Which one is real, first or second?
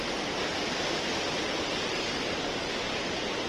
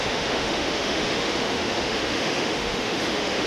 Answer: first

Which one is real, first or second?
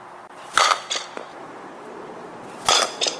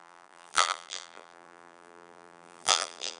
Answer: first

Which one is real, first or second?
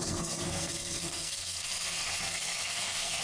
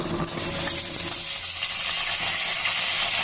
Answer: second